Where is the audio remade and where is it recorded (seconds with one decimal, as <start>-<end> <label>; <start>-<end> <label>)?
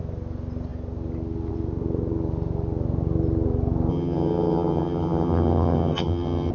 0.0-3.9 recorded; 3.9-6.5 remade